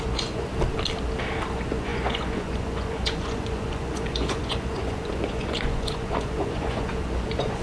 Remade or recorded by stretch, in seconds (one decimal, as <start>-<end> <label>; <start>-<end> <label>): 0.0-0.5 remade; 0.5-1.5 recorded; 1.5-7.6 remade